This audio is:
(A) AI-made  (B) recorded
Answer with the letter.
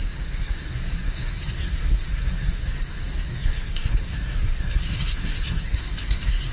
A